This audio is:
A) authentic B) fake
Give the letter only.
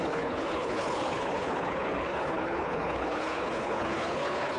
B